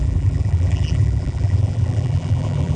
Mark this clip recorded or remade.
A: remade